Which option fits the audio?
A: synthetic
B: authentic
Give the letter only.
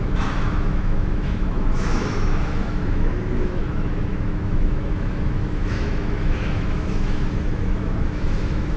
A